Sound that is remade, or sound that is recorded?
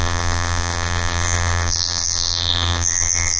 remade